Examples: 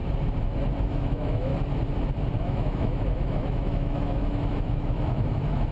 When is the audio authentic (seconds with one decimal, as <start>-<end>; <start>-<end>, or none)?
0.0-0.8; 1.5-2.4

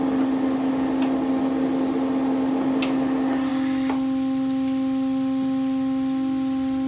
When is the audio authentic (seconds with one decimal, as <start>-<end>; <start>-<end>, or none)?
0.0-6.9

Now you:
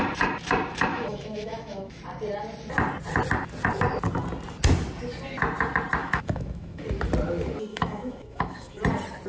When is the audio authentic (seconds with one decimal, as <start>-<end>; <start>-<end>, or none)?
0.0-0.9; 2.0-6.0; 6.8-7.7; 8.8-9.3